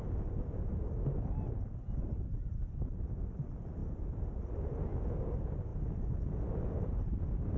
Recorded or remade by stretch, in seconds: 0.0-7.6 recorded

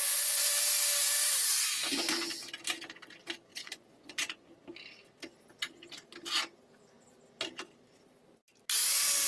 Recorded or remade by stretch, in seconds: 0.0-0.5 remade; 0.5-3.5 recorded; 3.5-4.5 remade; 4.5-9.3 recorded